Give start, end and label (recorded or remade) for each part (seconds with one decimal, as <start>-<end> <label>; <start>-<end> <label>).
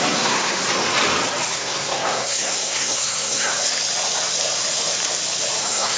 0.0-0.6 remade; 0.6-1.5 recorded; 1.5-3.5 remade; 3.5-5.6 recorded; 5.6-6.0 remade